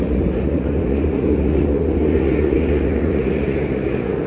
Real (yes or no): no